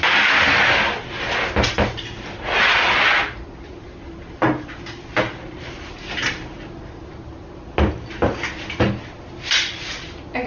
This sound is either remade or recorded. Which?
recorded